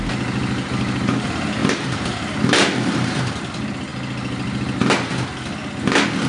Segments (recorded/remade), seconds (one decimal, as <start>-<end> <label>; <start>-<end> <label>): 0.0-1.6 recorded; 1.6-3.4 remade; 3.4-6.3 recorded